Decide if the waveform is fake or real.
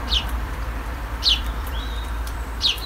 fake